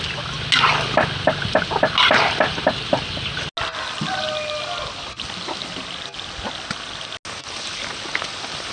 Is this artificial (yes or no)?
no